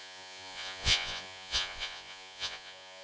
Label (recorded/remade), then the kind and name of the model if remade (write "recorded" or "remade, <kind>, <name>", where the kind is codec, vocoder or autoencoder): remade, vocoder, Vocos